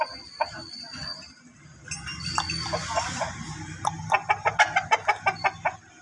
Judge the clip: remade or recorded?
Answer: recorded